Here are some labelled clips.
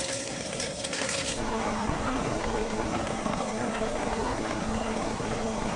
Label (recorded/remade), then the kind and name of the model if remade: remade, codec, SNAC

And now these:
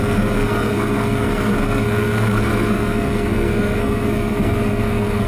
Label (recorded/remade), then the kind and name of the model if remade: remade, codec, SNAC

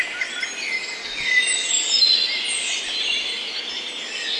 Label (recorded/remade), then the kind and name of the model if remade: recorded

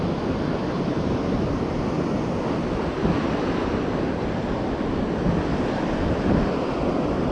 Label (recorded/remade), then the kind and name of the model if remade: recorded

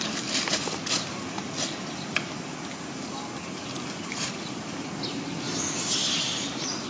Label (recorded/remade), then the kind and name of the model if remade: recorded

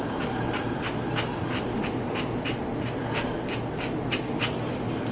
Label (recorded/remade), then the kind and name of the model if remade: recorded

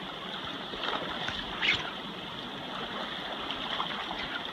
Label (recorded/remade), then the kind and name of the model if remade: recorded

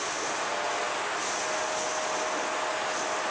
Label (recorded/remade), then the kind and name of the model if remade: recorded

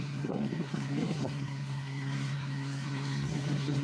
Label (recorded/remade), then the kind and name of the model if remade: remade, codec, SNAC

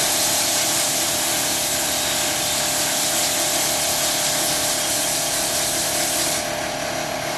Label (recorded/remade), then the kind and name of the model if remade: recorded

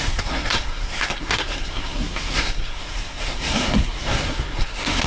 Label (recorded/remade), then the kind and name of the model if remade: remade, codec, SNAC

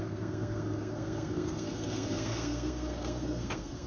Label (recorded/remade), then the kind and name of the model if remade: remade, codec, SNAC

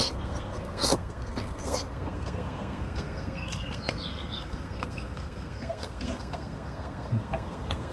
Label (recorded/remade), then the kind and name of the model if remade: remade, codec, SNAC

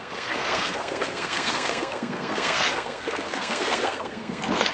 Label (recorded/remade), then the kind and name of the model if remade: remade, codec, SNAC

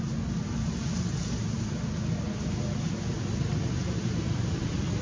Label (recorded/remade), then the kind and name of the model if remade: recorded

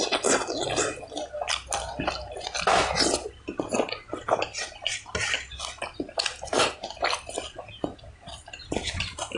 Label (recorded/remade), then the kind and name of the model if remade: recorded